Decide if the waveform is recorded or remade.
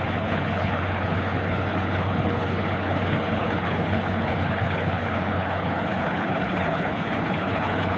remade